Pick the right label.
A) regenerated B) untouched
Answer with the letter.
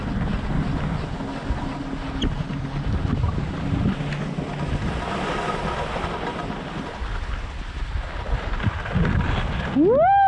B